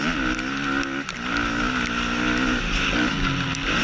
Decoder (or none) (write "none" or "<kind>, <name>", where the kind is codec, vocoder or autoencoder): none